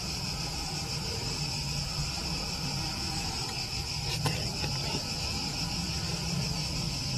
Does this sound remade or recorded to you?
recorded